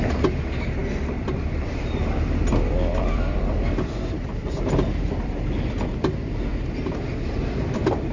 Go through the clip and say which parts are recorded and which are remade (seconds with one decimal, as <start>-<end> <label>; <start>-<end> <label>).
0.0-0.8 recorded; 0.8-3.6 remade; 3.6-4.4 recorded; 4.4-6.5 remade; 6.5-8.1 recorded